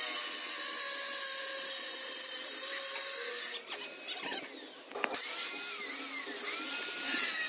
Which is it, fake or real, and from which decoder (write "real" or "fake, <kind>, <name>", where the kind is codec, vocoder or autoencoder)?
real